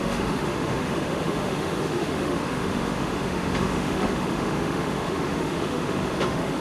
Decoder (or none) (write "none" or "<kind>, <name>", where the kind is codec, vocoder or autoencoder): autoencoder, DAC-VAE